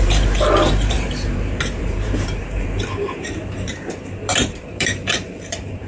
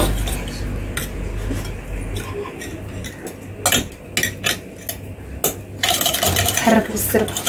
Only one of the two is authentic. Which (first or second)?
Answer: second